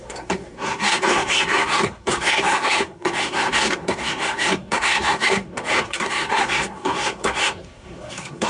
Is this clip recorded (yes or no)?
no